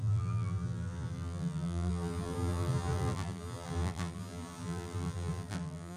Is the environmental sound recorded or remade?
remade